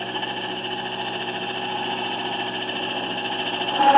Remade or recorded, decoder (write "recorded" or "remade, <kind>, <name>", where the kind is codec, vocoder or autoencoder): recorded